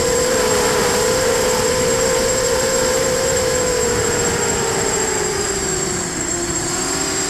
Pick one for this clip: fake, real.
fake